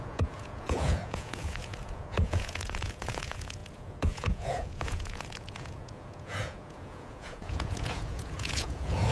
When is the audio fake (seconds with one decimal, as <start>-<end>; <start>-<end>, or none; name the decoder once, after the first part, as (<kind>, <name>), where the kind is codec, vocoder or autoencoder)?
0.0-9.1 (vocoder, Vocos)